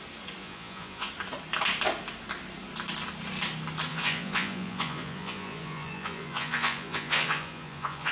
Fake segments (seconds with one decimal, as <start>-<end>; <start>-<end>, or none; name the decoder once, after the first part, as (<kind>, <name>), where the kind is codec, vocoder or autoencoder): 0.4-1.1 (vocoder, Vocos); 3.9-8.1